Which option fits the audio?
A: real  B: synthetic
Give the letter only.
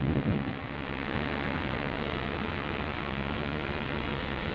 B